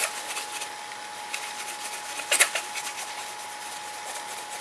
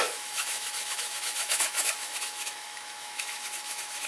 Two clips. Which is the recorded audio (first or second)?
first